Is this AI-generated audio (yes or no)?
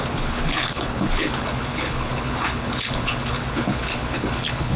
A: yes